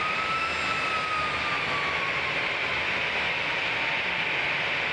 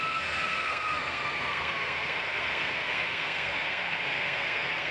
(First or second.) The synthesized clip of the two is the second